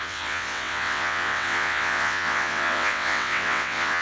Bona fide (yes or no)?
no